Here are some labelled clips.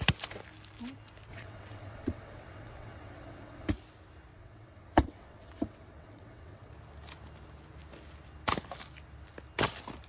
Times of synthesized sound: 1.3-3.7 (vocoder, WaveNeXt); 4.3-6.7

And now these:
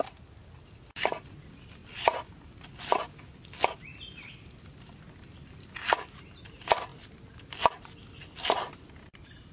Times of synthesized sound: none

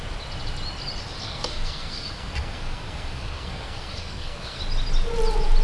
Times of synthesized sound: 1.2-4.6 (codec, SNAC)

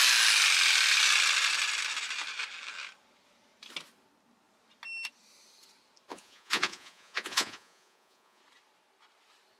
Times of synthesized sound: 6.1-8.4 (vocoder, Vocos)

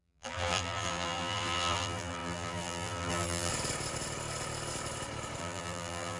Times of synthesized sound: 0.0-3.5 (vocoder, BigVGAN v2); 5.4-6.2